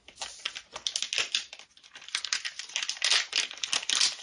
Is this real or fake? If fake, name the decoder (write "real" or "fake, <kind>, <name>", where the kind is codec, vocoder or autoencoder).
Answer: real